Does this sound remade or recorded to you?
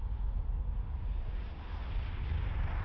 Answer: recorded